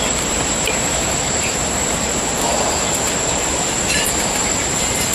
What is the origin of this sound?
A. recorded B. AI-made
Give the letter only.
B